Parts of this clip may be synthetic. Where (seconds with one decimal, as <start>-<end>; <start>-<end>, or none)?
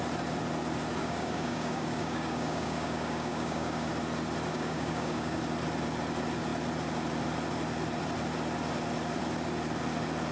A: 1.0-3.9; 4.5-5.4